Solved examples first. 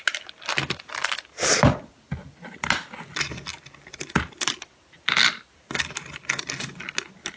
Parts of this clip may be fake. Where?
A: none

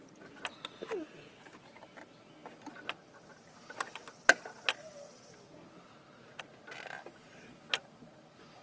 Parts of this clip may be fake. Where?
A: none

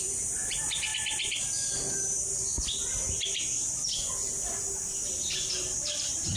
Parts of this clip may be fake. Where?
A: none

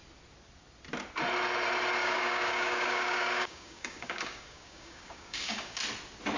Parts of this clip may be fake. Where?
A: 2.0-5.8 (codec, DAC)

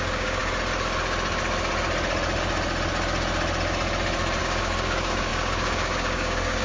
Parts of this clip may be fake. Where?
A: 0.0-0.4 (codec, DAC); 4.4-6.6

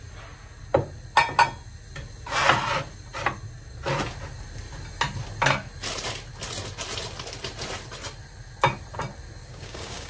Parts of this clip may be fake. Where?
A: 9.4-10.1 (codec, DAC)